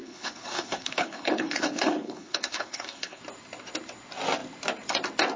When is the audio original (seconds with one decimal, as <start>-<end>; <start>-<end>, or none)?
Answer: 3.2-5.4